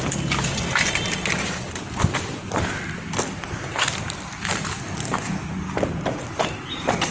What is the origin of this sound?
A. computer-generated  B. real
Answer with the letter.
B